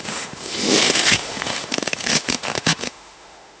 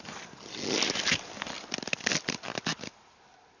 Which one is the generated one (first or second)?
first